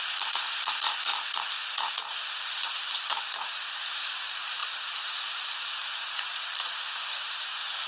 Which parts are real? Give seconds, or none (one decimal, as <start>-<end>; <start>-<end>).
none